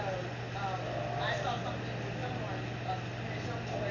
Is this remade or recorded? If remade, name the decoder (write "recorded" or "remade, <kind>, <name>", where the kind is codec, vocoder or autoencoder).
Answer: recorded